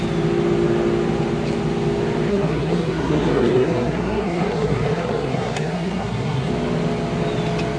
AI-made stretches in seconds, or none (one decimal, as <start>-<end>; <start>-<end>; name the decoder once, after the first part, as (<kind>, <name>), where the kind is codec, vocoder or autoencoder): 2.3-6.5 (codec, SNAC)